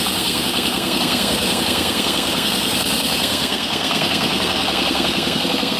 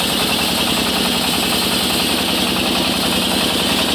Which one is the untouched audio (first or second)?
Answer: second